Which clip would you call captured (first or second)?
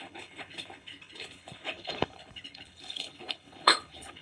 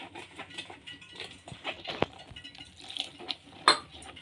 second